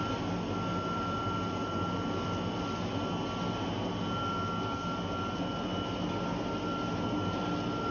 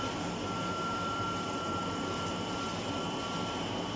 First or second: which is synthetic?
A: second